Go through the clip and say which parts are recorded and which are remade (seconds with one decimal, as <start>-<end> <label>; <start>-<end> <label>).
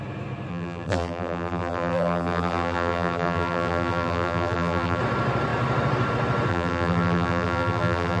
0.0-0.5 recorded; 0.5-5.0 remade; 5.0-6.5 recorded; 6.5-8.2 remade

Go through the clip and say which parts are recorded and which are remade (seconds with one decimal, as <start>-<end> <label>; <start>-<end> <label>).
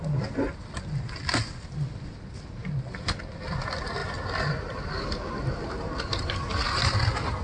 0.0-7.4 recorded